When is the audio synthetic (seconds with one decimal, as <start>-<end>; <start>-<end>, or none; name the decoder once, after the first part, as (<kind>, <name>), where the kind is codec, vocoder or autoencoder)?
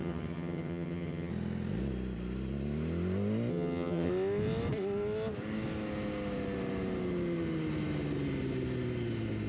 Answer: 0.0-1.3 (vocoder, HiFi-GAN); 3.5-4.1